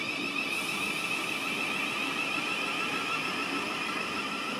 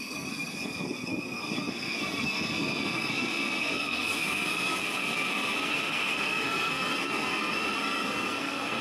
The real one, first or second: first